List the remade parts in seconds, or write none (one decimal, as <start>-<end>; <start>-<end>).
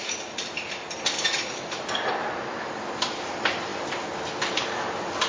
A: none